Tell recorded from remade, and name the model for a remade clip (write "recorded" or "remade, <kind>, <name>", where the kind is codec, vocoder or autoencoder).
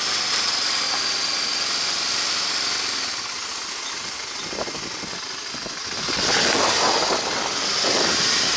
recorded